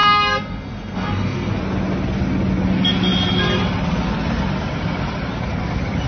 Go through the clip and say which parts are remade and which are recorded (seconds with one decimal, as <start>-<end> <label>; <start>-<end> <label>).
0.0-1.5 remade; 1.5-6.1 recorded